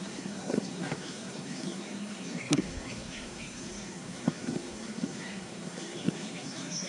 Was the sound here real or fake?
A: fake